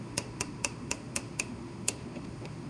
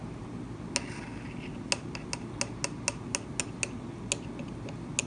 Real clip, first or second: second